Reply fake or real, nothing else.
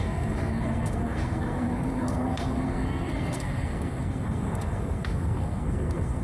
fake